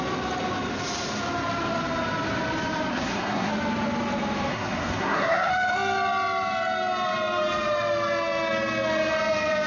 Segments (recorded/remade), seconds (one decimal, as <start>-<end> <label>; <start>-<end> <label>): 0.0-2.9 recorded; 2.9-3.5 remade; 3.5-4.5 recorded; 4.5-5.5 remade; 5.5-9.7 recorded